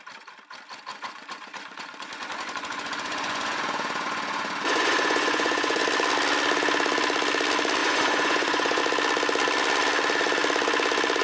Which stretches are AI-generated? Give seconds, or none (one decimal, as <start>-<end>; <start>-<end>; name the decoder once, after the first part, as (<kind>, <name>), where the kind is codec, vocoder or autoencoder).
0.9-5.8 (vocoder, Vocos); 7.8-8.8